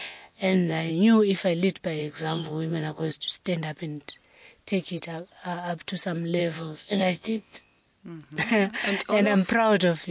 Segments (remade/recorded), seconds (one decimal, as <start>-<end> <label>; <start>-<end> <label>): 0.0-0.9 remade; 0.9-2.0 recorded; 2.0-3.1 remade; 3.1-6.4 recorded; 6.4-7.8 remade; 7.8-10.1 recorded